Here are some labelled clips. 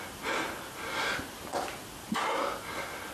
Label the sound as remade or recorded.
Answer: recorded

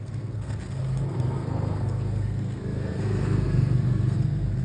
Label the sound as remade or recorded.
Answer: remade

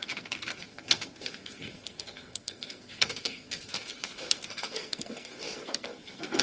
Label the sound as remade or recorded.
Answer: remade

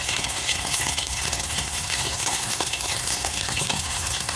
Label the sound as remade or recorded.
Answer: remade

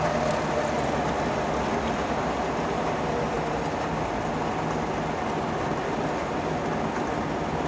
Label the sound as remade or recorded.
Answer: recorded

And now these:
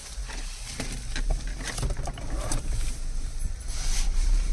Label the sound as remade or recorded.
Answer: recorded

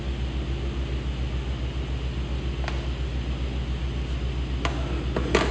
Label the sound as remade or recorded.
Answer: recorded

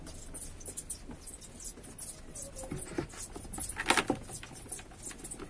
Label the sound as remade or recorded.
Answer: recorded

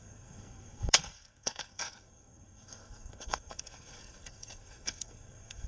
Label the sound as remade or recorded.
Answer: remade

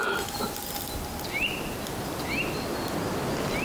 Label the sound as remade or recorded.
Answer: recorded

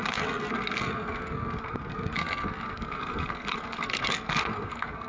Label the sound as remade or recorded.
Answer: remade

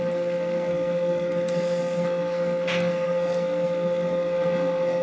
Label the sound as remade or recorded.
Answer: remade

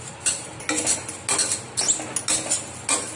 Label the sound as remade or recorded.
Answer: recorded